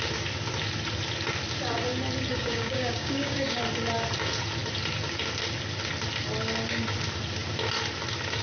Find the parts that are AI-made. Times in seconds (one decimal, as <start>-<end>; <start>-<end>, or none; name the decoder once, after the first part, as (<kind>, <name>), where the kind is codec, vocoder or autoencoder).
2.3-3.6 (codec, DAC)